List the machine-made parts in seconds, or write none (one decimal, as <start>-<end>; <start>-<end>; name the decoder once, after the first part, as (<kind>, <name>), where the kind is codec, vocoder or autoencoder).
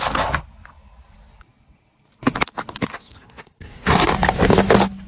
2.9-4.1 (codec, SNAC)